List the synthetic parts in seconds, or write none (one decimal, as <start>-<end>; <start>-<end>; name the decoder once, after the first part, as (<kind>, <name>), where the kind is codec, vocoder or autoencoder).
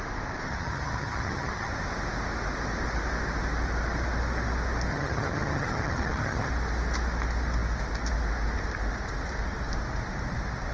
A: 0.5-1.7 (vocoder, HiFi-GAN); 4.9-6.5